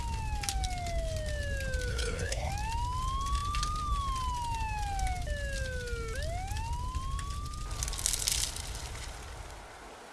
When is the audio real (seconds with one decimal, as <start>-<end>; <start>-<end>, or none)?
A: 0.0-1.9; 2.5-10.1